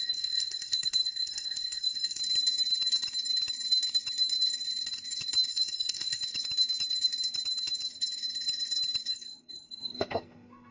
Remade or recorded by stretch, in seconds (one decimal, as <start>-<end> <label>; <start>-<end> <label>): 0.0-2.2 remade; 2.2-5.5 recorded; 5.5-6.2 remade; 6.2-9.1 recorded; 9.1-10.7 remade